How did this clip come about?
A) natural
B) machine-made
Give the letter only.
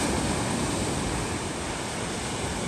A